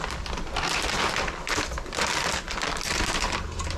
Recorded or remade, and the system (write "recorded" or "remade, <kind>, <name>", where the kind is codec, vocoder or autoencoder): recorded